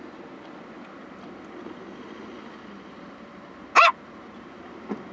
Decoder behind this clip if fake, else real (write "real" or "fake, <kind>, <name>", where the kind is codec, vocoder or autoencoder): real